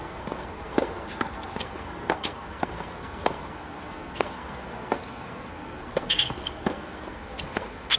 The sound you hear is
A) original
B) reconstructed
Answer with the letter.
B